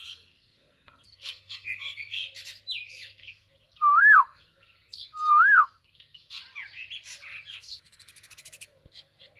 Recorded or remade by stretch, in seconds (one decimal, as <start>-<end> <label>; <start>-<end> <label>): 0.0-2.2 remade; 2.2-2.9 recorded; 2.9-6.4 remade; 6.4-7.5 recorded; 7.5-9.4 remade